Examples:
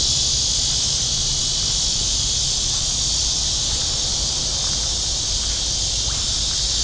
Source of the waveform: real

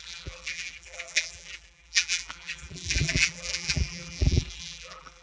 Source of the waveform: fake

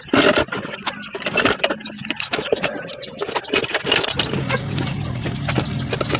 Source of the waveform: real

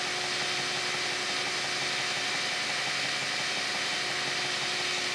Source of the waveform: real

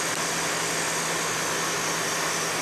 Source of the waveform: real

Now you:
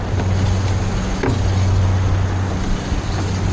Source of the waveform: real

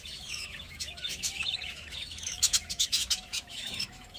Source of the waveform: fake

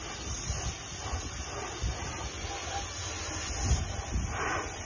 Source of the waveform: real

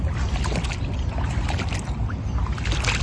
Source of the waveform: real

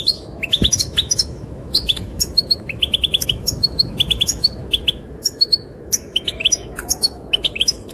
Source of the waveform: fake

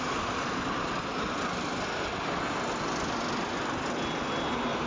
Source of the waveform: real